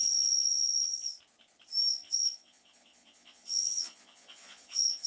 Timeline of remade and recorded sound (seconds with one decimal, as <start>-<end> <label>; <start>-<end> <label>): 0.0-1.2 remade; 1.2-1.9 recorded; 1.9-5.1 remade